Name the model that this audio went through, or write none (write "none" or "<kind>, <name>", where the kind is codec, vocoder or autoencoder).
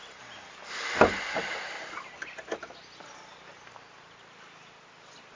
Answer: none